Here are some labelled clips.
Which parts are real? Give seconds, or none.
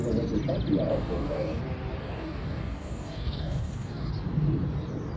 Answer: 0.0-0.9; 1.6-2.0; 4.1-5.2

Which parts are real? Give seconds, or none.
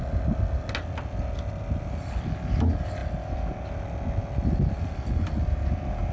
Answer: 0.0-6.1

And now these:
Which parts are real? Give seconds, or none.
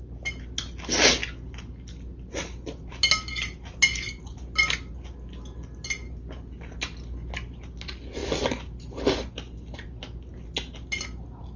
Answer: 0.0-11.6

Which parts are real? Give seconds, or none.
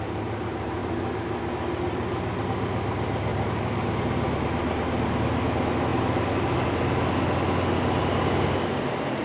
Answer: 0.0-3.3; 3.9-9.2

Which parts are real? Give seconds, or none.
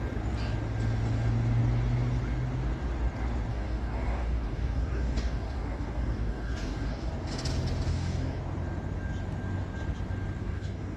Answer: 0.0-3.5; 7.1-7.9; 8.4-10.4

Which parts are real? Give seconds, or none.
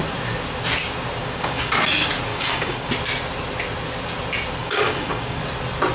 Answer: 0.0-1.2; 1.7-2.3; 2.9-4.6; 5.4-5.9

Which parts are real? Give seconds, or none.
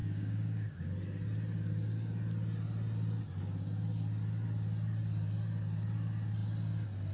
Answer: 0.9-7.1